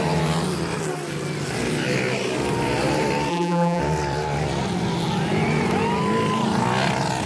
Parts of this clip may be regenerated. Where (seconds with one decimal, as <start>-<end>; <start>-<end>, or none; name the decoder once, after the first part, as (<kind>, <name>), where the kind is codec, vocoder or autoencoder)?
3.3-3.8 (vocoder, BigVGAN v2)